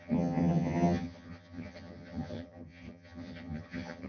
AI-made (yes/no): yes